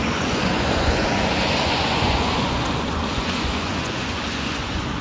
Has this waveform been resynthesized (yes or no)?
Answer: yes